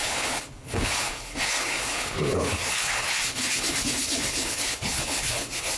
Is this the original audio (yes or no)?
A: no